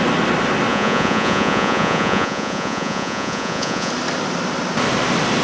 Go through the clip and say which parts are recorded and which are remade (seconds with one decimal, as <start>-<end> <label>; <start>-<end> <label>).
0.0-0.7 recorded; 0.7-3.9 remade; 3.9-5.4 recorded